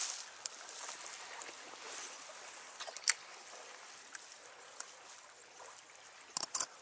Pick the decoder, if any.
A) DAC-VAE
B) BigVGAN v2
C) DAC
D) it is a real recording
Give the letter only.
D